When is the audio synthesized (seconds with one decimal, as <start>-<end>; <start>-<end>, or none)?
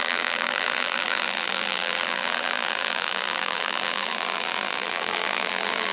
0.0-5.9